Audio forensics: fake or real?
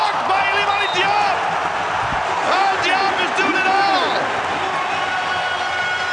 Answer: real